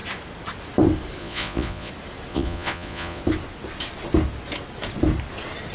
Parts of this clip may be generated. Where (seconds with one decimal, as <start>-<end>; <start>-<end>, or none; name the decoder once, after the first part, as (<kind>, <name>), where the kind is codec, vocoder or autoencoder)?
1.2-1.9 (vocoder, Vocos); 2.3-3.2